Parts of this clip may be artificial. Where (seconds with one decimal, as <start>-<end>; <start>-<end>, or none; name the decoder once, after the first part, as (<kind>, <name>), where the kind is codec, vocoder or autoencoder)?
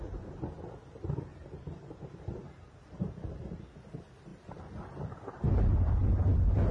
1.3-3.6 (vocoder, BigVGAN v2); 4.3-5.4